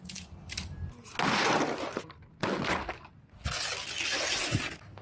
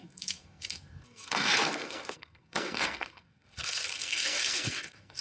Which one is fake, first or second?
second